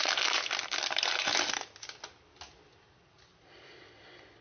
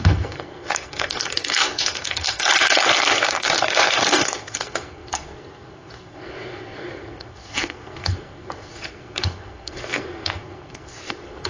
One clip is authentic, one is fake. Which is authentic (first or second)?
first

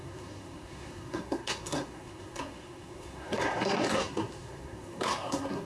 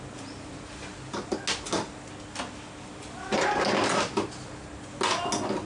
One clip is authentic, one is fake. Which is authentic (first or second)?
second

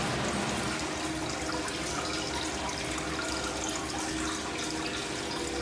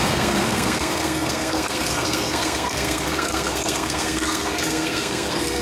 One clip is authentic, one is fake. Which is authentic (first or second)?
first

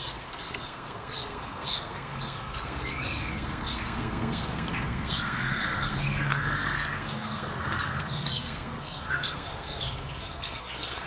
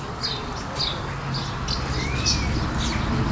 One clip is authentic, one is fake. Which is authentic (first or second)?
second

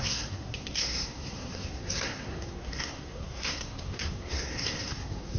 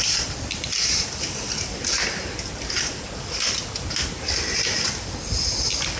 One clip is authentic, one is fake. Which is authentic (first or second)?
second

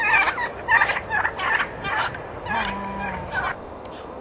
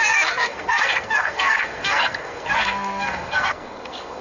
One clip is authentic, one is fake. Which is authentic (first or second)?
first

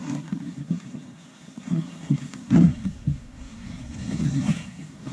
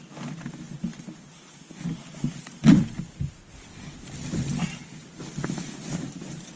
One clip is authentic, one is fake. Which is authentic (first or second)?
second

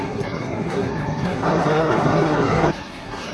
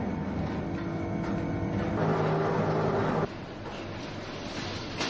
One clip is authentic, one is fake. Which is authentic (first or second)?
second